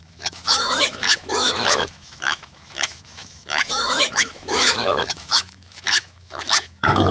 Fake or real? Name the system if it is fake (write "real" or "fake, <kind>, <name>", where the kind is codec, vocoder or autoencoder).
fake, autoencoder, DAC-VAE